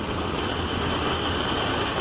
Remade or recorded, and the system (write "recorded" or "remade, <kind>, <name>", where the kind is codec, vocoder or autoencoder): recorded